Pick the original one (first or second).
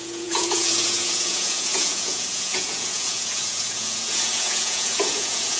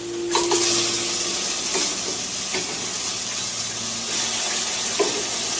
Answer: second